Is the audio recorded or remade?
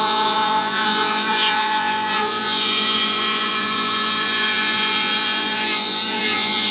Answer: remade